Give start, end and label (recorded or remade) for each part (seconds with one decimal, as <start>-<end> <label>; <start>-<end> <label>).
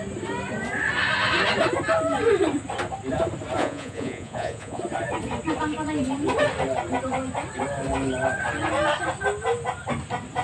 0.0-3.6 recorded; 3.6-4.8 remade; 4.8-10.4 recorded